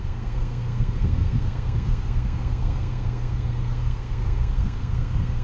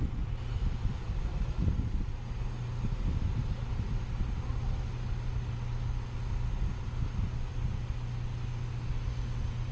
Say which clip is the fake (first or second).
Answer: first